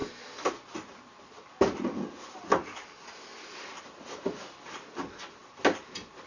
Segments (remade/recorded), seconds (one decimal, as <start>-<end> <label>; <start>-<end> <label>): 0.0-6.3 recorded